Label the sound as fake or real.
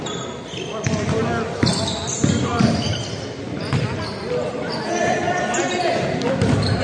real